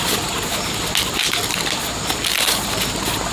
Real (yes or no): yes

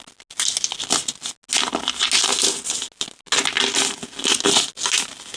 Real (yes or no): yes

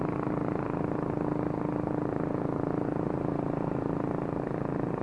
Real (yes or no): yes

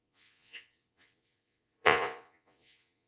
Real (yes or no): no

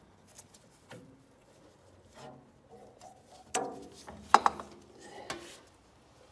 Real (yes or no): yes